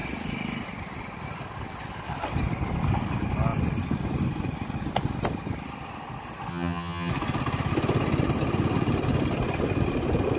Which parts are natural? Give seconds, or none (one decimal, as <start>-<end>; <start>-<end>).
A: 0.0-6.5; 7.1-10.4